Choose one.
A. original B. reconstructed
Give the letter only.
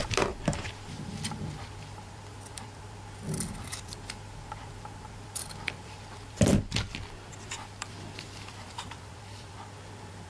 B